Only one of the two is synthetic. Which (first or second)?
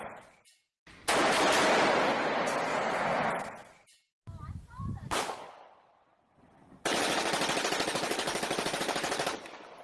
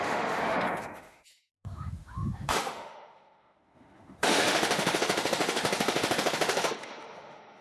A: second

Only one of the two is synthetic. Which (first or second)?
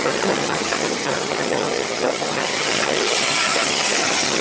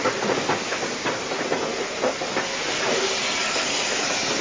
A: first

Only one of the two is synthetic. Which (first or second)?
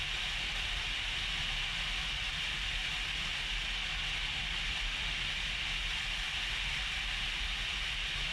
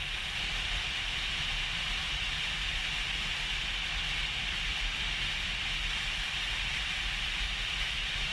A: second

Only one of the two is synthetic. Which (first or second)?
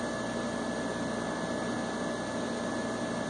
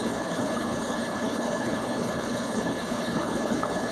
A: second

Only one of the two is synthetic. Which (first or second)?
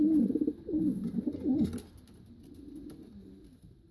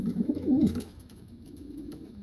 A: second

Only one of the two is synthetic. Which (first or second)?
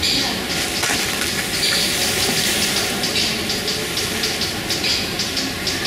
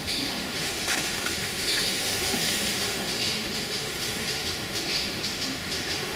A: second